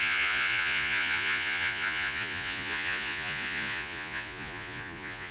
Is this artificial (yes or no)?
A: yes